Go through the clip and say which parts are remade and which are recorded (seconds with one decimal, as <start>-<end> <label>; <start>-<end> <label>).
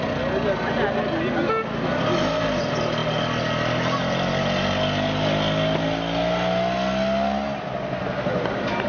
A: 0.0-8.9 recorded